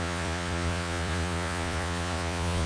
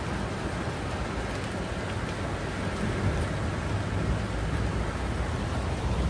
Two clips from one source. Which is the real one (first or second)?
second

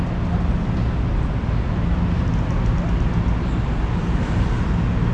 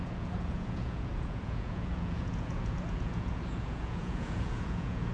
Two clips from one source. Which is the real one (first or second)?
first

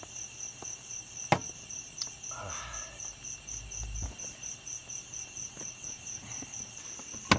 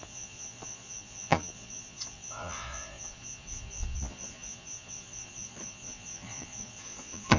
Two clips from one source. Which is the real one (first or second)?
first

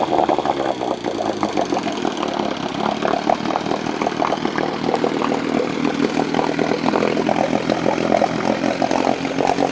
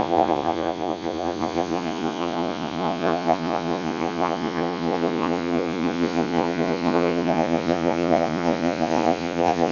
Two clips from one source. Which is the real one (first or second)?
first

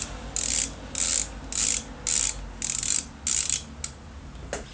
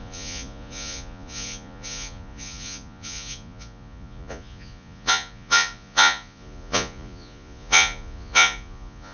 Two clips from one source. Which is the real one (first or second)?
first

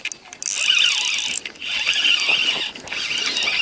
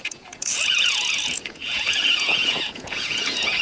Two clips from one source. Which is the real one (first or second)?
first